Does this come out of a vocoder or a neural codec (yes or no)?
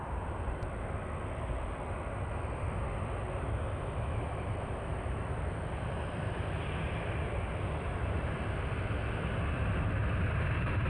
no